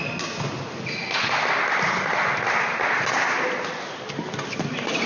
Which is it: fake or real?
real